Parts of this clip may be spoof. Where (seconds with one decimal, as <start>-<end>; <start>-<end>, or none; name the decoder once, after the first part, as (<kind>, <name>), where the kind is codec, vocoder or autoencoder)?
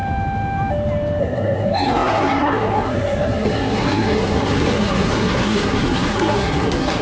1.2-7.0 (codec, SNAC)